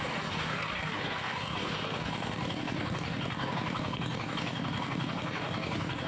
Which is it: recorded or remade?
remade